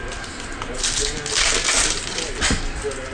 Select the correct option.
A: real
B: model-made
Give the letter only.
A